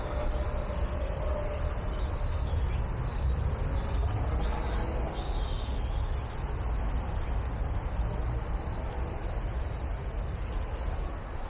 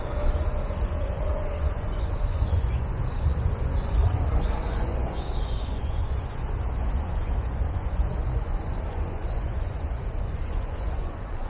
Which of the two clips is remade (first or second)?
second